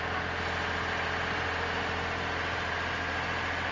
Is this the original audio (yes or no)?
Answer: yes